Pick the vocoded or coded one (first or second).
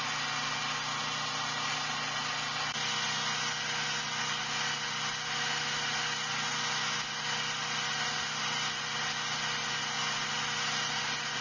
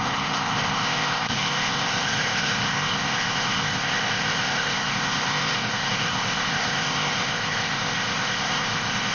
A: second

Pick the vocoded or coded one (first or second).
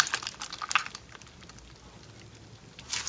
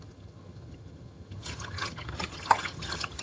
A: second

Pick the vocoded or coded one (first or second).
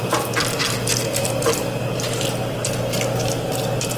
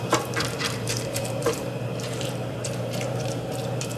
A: second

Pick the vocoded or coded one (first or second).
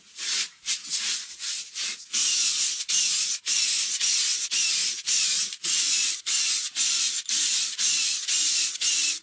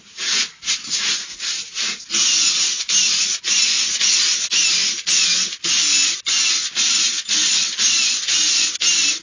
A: first